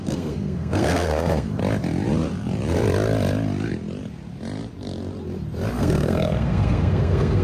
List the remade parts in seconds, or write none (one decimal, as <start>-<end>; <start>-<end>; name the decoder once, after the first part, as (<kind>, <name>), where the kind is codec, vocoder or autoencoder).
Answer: 0.0-1.6 (codec, SNAC); 5.8-7.4